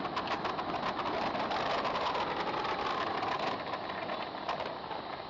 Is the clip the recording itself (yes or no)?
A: yes